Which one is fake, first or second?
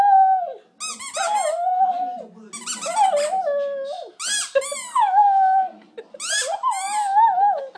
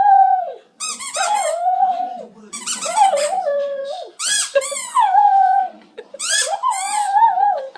second